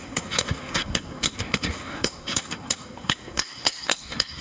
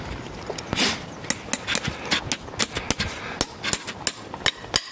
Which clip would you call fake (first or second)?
first